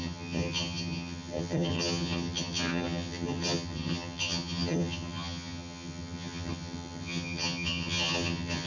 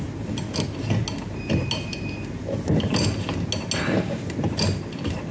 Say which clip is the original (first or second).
second